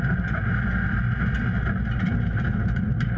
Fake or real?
real